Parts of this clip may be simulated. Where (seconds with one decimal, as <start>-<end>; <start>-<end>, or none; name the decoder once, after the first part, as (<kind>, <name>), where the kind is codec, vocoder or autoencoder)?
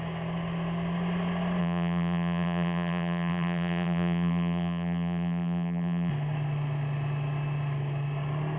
1.6-6.1 (vocoder, BigVGAN v2)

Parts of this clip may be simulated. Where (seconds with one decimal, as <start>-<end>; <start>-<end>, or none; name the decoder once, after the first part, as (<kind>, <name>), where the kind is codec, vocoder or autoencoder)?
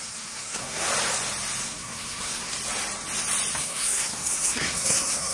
0.0-0.9 (codec, SNAC); 1.6-2.5; 3.6-5.3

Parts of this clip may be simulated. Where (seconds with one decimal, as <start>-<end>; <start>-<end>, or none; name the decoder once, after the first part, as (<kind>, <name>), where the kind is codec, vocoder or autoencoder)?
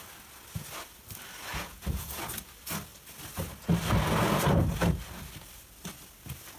1.5-2.2 (vocoder, Vocos)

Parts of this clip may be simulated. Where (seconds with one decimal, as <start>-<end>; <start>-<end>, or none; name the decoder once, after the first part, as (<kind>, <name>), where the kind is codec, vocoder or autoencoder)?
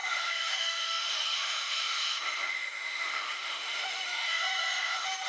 0.0-5.3 (autoencoder, DAC-VAE)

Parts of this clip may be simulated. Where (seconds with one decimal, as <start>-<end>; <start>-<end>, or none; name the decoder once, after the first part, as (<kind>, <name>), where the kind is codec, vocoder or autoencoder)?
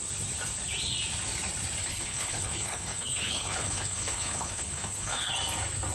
1.8-5.3 (codec, HILCodec)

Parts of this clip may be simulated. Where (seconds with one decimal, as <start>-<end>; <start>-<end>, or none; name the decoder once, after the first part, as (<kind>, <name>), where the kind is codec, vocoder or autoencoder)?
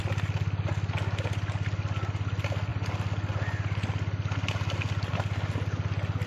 none